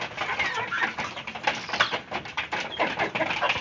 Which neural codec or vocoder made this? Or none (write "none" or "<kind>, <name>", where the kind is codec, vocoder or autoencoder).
none